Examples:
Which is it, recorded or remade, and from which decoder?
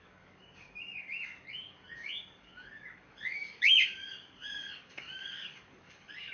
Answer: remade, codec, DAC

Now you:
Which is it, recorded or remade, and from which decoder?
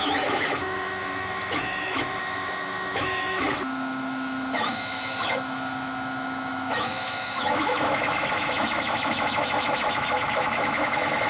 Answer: remade, autoencoder, DAC-VAE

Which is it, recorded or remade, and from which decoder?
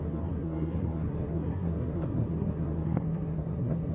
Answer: remade, codec, SNAC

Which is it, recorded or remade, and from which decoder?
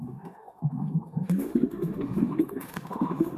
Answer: remade, autoencoder, DAC-VAE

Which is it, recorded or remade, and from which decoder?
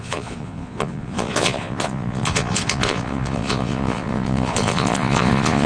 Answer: remade, vocoder, Vocos